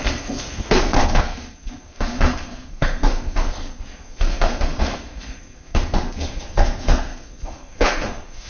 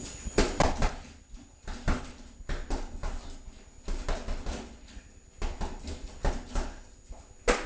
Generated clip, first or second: first